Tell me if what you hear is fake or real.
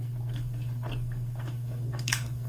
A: fake